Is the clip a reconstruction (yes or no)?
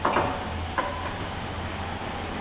no